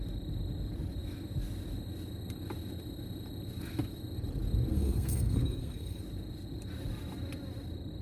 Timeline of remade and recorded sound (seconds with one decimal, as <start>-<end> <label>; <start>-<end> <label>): 0.0-4.7 recorded; 4.7-6.0 remade; 6.0-8.0 recorded